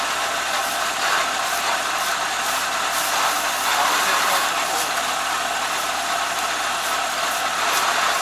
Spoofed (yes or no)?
no